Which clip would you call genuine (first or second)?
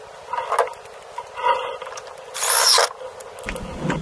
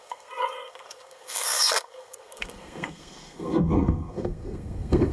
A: first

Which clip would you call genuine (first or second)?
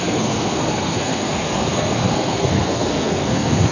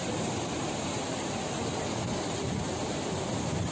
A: second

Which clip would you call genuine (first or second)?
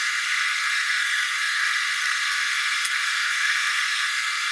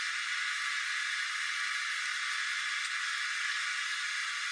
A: second